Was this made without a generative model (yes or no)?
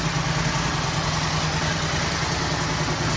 yes